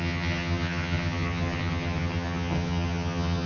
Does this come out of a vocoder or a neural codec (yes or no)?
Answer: yes